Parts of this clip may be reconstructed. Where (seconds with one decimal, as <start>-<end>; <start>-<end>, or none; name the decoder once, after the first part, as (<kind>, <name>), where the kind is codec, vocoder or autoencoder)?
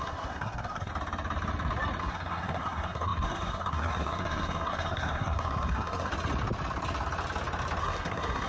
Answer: 0.0-0.9 (codec, SNAC); 2.0-6.1; 7.8-8.5